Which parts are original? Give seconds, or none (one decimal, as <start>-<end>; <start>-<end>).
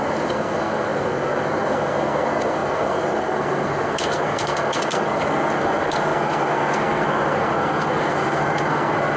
none